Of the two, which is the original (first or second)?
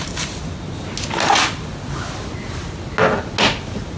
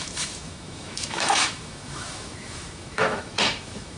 first